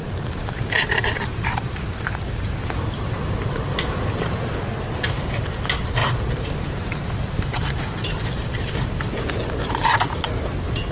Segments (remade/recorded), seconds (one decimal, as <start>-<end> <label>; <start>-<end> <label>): 0.0-4.1 remade; 4.1-6.0 recorded; 6.0-10.0 remade; 10.0-10.9 recorded